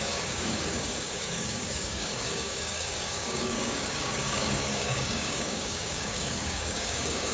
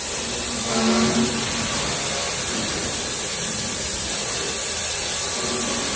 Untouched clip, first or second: second